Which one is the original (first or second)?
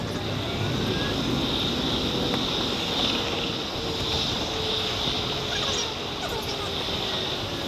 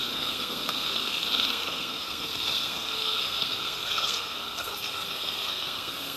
first